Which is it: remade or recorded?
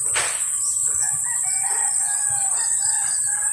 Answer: recorded